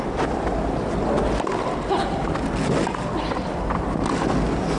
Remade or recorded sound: recorded